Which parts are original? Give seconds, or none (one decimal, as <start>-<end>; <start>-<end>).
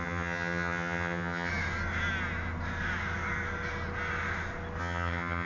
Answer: 1.5-4.8